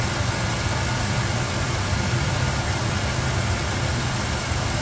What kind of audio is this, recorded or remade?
recorded